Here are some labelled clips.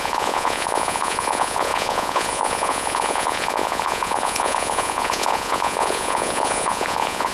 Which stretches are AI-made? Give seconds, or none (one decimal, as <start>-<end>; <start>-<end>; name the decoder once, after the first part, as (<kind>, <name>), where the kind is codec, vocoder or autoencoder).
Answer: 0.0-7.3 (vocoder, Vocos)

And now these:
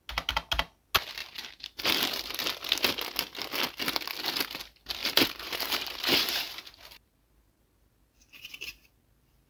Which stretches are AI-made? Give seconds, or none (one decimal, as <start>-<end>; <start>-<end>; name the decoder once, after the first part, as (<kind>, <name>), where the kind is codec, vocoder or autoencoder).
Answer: 1.2-2.3 (vocoder, BigVGAN v2); 5.0-7.4

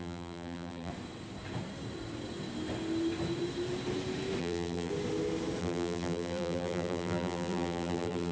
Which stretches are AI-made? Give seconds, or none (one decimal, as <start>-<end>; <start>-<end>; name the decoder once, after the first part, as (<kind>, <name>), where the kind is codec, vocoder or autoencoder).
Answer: 0.0-0.9 (vocoder, BigVGAN v2); 4.4-4.9; 5.6-8.3

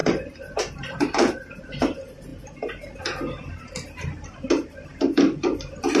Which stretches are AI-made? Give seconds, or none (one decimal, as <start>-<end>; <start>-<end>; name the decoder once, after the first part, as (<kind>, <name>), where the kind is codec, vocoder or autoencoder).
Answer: 0.0-1.6 (vocoder, BigVGAN v2); 4.9-6.0

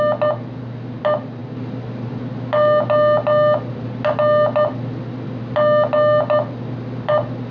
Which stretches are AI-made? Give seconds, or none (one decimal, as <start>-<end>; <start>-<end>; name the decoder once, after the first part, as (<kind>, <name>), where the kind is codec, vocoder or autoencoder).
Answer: none

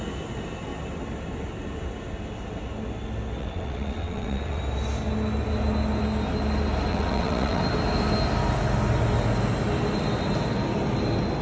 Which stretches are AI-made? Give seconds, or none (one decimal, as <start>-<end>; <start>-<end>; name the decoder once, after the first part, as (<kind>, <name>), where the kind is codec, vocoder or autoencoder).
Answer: 3.4-4.6 (vocoder, WaveNeXt); 6.9-7.6